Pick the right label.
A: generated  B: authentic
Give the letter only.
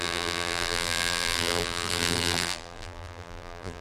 A